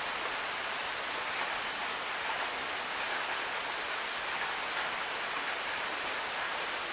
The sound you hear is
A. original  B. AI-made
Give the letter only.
A